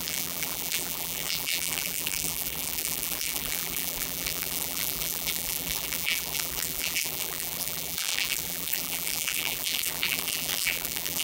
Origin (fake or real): fake